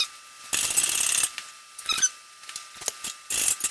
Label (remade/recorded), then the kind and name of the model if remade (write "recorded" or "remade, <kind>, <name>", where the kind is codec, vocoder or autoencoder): recorded